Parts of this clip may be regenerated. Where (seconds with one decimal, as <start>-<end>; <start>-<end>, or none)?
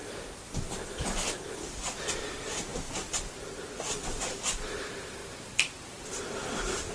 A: 2.2-2.7; 4.2-6.9